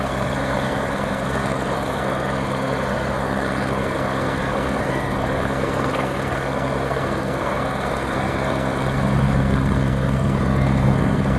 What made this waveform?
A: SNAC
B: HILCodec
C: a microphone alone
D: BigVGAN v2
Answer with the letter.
A